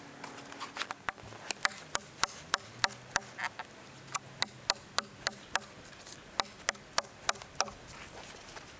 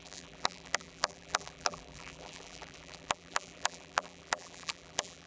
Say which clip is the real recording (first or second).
first